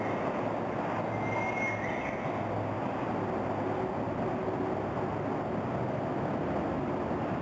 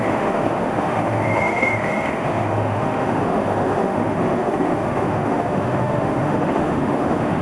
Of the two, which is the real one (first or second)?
first